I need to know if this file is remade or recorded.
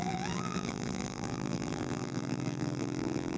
remade